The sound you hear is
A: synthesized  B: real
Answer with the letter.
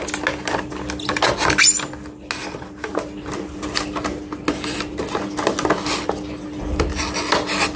B